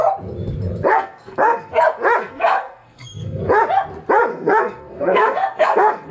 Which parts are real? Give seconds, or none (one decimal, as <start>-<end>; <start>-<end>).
0.0-0.9; 1.8-2.2; 3.4-4.3